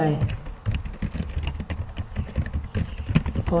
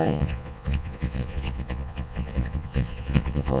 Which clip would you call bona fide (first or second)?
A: first